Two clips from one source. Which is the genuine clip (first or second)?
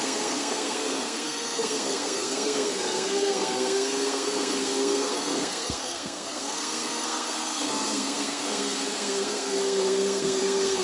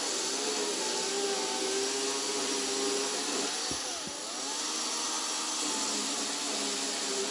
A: second